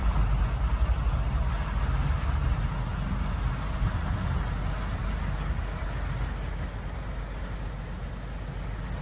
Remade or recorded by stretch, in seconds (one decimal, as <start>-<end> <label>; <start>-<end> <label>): 0.0-9.0 recorded